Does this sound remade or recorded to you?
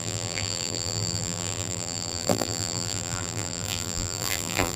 remade